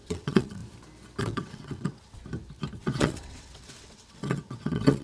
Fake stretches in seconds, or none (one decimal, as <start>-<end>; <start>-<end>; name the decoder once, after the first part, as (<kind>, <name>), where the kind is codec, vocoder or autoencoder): 0.0-0.6 (vocoder, WaveNeXt); 1.2-2.2; 2.8-5.0